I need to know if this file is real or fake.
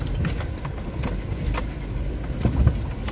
real